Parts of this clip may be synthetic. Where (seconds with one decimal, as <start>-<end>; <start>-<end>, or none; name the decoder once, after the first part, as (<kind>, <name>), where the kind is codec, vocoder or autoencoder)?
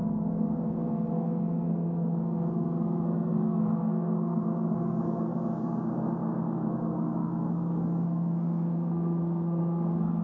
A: 0.0-10.2 (codec, SNAC)